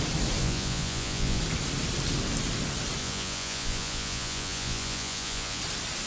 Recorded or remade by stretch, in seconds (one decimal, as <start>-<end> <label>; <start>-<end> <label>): 0.0-0.4 recorded; 0.4-1.4 remade; 1.4-3.0 recorded; 3.0-5.6 remade; 5.6-6.1 recorded